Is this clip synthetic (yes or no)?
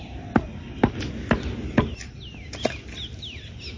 no